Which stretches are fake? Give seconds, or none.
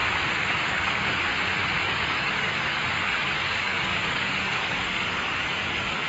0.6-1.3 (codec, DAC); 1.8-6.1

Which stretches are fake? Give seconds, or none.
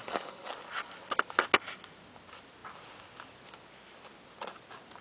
0.0-0.5 (codec, DAC)